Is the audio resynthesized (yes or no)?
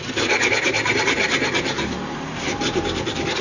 no